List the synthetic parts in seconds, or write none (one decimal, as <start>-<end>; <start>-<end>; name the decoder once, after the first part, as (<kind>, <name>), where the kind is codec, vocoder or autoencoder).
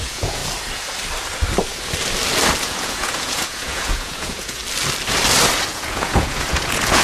0.0-0.4 (vocoder, Vocos); 2.6-4.6; 5.7-7.0